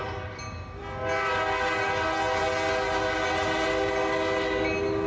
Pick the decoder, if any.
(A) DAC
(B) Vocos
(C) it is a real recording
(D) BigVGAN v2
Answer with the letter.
C